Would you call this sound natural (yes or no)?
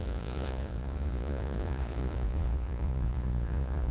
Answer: no